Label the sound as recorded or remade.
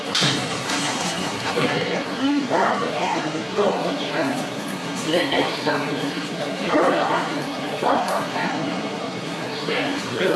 remade